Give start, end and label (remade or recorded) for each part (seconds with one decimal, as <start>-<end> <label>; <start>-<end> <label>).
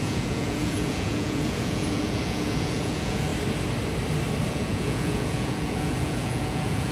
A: 0.0-3.3 remade; 3.3-4.5 recorded; 4.5-6.9 remade